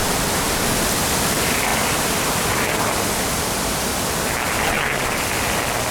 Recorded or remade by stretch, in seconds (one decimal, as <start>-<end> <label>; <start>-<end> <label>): 0.0-5.9 recorded